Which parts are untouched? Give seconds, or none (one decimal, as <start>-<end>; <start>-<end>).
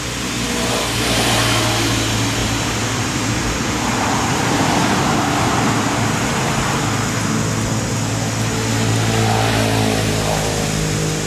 0.0-2.4; 5.0-11.3